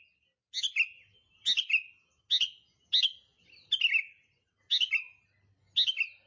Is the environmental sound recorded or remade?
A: recorded